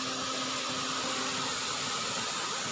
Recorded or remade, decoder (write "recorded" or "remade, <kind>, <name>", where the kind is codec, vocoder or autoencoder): recorded